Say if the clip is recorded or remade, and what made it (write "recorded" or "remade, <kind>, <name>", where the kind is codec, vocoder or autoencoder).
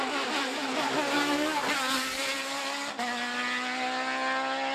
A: recorded